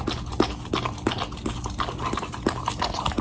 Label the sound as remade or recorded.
recorded